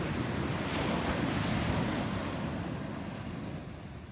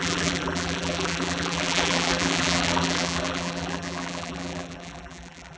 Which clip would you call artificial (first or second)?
second